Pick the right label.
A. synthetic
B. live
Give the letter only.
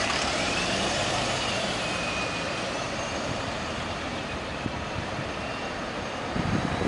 A